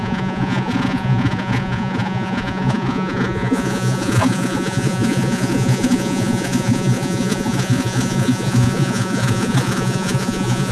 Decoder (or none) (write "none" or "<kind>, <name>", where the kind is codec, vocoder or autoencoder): vocoder, Vocos